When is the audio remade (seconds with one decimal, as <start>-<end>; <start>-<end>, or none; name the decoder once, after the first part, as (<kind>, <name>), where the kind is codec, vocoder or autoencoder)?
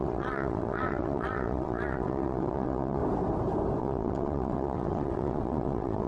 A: 0.0-3.0 (vocoder, WaveNeXt); 3.8-6.1